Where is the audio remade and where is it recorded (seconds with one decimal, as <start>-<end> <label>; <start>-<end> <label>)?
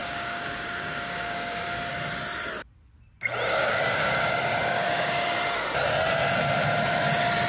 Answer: 0.0-1.9 remade; 1.9-3.5 recorded; 3.5-5.4 remade; 5.4-7.5 recorded